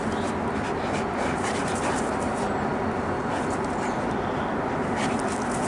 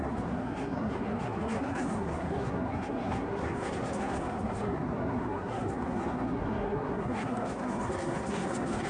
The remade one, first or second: second